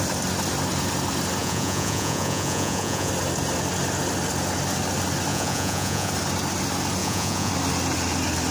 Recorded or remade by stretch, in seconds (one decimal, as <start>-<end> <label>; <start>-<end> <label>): 0.0-1.4 recorded; 1.4-3.1 remade; 3.1-5.3 recorded; 5.3-6.1 remade; 6.1-7.0 recorded; 7.0-7.5 remade; 7.5-8.5 recorded